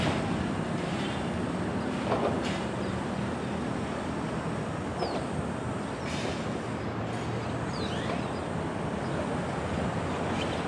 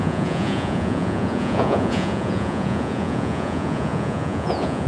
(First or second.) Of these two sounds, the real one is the first